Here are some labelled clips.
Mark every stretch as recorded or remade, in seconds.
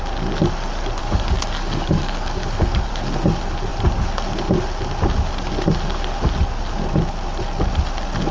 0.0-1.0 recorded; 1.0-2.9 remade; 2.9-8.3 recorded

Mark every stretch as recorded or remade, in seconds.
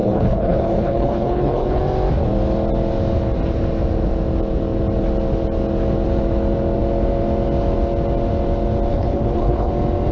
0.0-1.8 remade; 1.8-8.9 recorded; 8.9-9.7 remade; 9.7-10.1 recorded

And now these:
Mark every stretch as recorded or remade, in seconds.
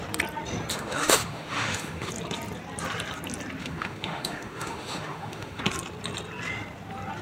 0.0-0.7 recorded; 0.7-2.1 remade; 2.1-3.6 recorded; 3.6-5.6 remade; 5.6-7.2 recorded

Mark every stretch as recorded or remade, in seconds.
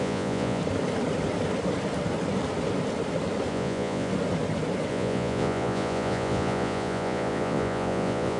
0.0-0.6 remade; 0.6-3.5 recorded; 3.5-4.1 remade; 4.1-4.9 recorded; 4.9-8.4 remade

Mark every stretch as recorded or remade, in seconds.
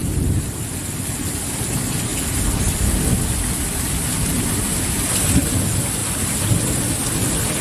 0.0-0.5 remade; 0.5-2.1 recorded; 2.1-2.6 remade; 2.6-6.0 recorded; 6.0-6.6 remade; 6.6-7.6 recorded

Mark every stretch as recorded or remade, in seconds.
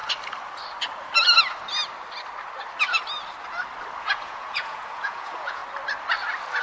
0.0-4.0 recorded; 4.0-5.6 remade; 5.6-6.6 recorded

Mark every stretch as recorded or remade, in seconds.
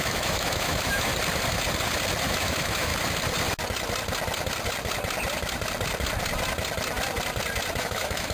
0.0-1.1 remade; 1.1-2.3 recorded; 2.3-2.9 remade; 2.9-7.8 recorded; 7.8-8.3 remade